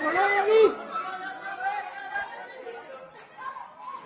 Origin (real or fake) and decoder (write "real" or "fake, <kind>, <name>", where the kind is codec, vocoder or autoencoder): real